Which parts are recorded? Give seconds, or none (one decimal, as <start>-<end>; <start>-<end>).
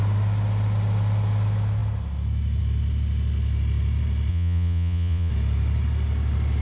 0.0-4.3; 5.3-6.6